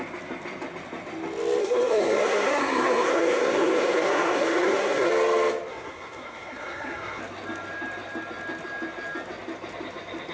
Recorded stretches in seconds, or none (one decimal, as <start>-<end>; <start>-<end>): 0.0-1.6; 5.1-5.7; 7.2-10.3

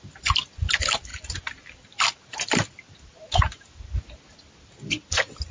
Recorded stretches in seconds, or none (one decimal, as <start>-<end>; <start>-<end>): 0.0-5.5

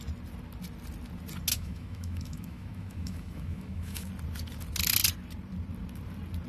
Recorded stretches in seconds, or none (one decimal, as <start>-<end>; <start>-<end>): 0.0-1.5; 4.1-6.5

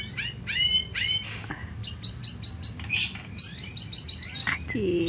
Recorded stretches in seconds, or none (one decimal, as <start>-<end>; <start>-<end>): 0.0-1.6

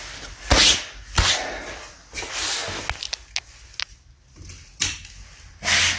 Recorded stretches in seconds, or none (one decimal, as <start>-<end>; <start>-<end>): 0.0-6.0

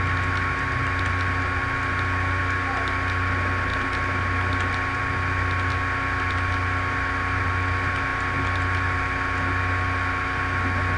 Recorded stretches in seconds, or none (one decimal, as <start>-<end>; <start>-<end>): 0.0-11.0